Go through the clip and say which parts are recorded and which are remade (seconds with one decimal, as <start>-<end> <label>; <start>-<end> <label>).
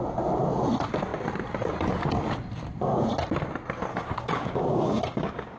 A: 0.0-3.9 recorded; 3.9-5.6 remade